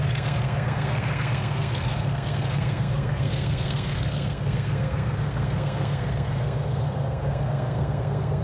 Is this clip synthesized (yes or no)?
yes